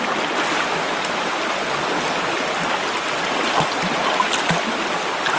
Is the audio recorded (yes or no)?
yes